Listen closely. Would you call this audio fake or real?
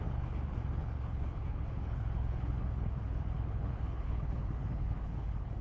fake